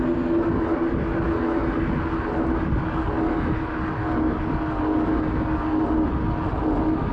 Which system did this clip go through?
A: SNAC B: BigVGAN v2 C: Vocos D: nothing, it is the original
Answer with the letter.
D